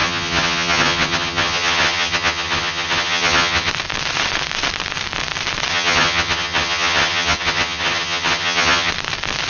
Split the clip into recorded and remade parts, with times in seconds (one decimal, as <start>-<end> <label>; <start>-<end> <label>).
0.0-3.7 remade; 3.7-5.7 recorded; 5.7-8.9 remade; 8.9-9.5 recorded